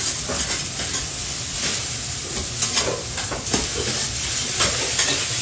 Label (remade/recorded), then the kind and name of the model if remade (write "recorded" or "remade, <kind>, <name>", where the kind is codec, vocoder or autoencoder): recorded